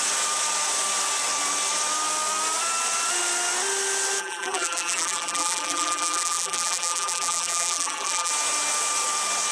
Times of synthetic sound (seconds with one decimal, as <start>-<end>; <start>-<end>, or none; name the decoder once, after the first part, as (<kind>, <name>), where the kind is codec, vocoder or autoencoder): 4.2-8.3 (vocoder, BigVGAN v2)